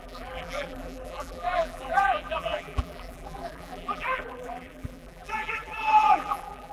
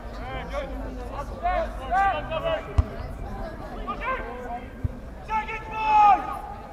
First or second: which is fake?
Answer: first